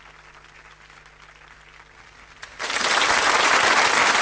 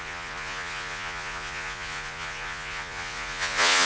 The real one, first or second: first